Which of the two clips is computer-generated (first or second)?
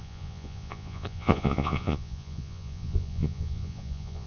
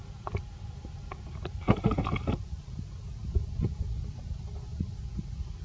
first